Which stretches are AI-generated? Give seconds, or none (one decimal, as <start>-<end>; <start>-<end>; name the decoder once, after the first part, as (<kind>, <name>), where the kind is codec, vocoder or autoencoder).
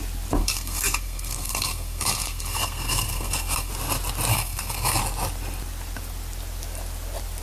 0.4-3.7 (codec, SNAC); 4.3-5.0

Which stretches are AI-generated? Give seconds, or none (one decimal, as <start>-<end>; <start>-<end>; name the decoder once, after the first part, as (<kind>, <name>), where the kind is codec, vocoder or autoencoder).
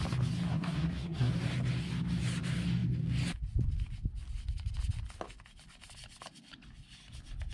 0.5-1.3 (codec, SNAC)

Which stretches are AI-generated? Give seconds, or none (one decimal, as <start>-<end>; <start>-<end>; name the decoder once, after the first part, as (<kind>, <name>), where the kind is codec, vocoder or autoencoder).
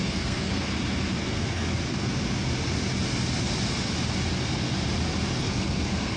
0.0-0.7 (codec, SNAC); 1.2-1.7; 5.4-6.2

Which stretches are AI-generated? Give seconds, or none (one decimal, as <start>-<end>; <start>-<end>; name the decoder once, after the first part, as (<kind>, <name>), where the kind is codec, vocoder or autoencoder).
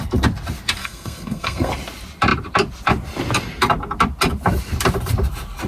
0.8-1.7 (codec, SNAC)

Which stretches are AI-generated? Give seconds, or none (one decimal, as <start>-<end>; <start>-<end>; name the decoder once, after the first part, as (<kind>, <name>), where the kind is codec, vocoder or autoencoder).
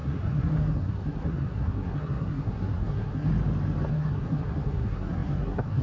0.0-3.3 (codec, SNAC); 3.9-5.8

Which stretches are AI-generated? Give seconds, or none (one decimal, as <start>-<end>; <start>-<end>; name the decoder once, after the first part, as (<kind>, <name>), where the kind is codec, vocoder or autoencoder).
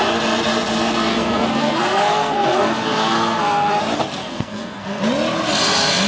1.1-3.8 (codec, SNAC); 4.2-5.0